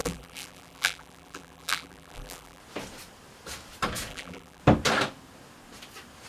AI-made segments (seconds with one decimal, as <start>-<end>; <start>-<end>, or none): 0.0-2.6; 4.1-4.6